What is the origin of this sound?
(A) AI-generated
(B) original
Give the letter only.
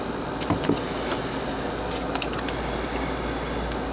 B